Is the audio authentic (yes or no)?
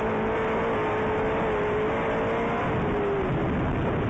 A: yes